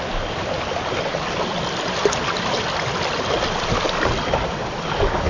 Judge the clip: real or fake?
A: real